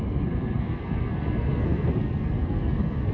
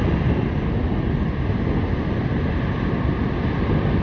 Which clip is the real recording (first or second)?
second